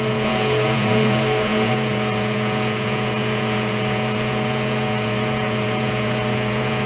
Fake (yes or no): yes